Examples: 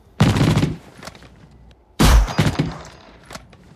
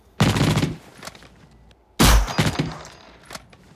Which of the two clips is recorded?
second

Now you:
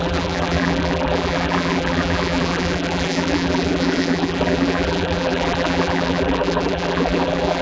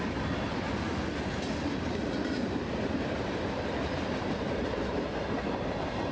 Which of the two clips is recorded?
second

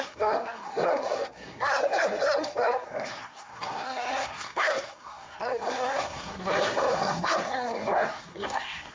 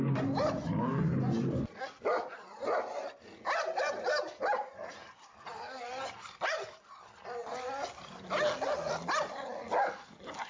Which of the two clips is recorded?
second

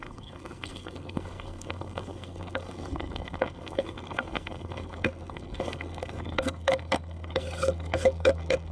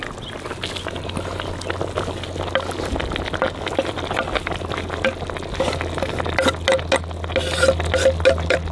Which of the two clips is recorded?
second